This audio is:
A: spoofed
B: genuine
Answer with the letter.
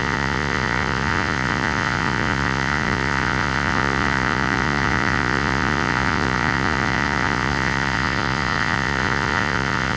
A